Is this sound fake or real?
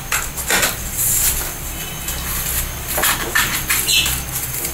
real